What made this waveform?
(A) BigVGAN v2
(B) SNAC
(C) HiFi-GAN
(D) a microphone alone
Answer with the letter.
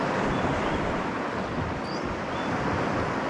D